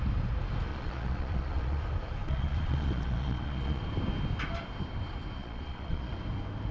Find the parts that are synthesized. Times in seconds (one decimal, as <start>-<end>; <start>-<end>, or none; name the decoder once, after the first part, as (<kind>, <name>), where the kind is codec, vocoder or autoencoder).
0.7-1.8 (vocoder, Vocos); 2.2-3.8; 5.4-6.1